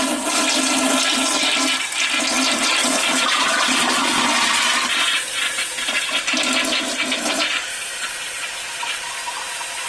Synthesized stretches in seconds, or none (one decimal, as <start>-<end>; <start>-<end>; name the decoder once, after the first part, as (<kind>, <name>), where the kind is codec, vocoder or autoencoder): 2.8-4.2 (vocoder, Vocos); 4.9-6.2; 7.7-9.9

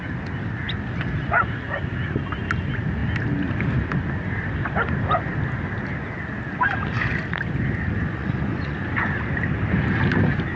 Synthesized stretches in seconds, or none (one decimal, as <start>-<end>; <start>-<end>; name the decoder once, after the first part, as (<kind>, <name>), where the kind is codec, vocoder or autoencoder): 8.0-9.1 (vocoder, Vocos)

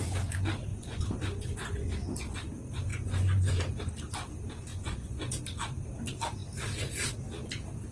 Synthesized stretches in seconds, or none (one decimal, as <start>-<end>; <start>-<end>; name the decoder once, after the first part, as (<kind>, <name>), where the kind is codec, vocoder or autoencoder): 0.7-1.9 (vocoder, Vocos); 2.9-3.5; 4.7-5.4

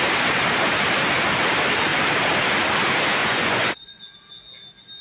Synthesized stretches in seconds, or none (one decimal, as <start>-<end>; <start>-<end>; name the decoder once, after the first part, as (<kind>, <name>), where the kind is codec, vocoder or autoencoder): 3.2-4.0 (vocoder, Vocos)

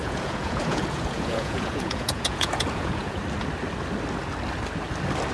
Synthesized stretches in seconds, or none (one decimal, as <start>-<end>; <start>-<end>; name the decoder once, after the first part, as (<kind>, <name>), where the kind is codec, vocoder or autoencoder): 0.0-3.2 (vocoder, Vocos)